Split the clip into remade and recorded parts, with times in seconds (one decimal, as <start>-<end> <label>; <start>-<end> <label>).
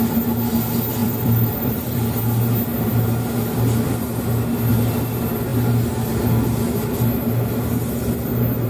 0.0-1.0 recorded; 1.0-2.2 remade; 2.2-8.7 recorded